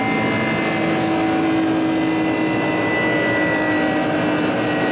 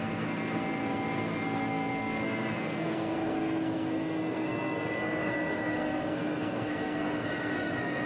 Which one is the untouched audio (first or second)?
first